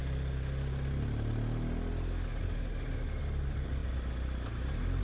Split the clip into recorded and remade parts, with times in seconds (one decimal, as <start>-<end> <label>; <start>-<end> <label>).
0.0-5.0 recorded